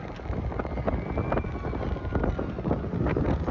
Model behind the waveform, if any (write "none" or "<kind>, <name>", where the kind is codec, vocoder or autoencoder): none